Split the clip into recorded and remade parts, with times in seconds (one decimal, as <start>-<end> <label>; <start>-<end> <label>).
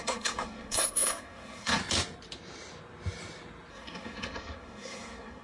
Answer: 0.0-1.8 remade; 1.8-3.7 recorded; 3.7-5.4 remade